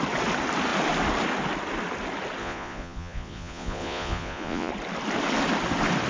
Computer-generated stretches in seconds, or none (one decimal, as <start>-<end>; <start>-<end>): 2.4-4.7